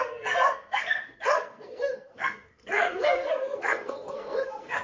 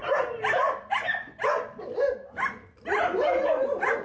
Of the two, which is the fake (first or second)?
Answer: first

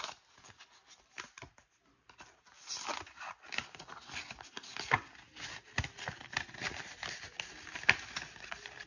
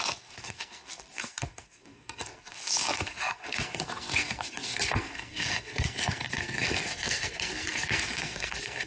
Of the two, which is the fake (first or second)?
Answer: second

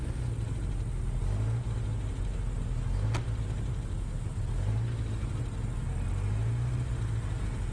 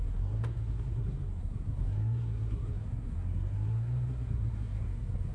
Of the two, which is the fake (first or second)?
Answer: second